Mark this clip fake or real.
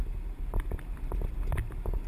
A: real